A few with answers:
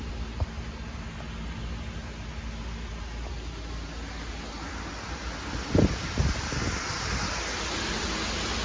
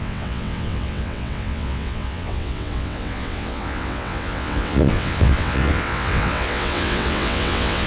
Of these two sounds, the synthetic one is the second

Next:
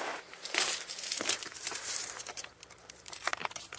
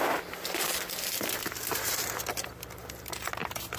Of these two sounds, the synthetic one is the first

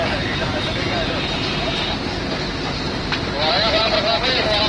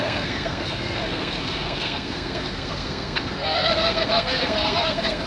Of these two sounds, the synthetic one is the second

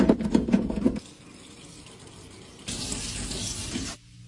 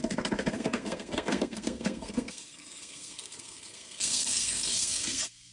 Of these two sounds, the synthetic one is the second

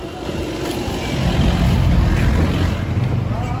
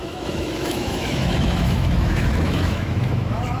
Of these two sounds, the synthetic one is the second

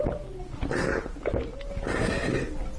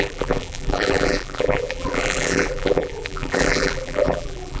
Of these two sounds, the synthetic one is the second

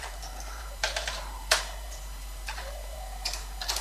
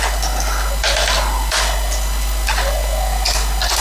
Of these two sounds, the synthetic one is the first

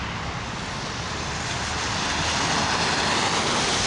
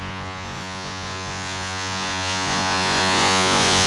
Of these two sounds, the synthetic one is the second